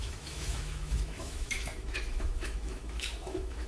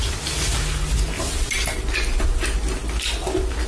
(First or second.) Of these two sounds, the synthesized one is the first